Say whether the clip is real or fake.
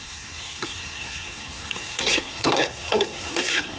fake